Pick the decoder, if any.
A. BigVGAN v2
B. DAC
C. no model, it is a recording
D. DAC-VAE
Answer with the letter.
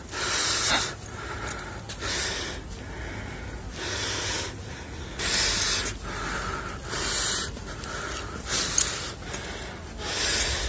C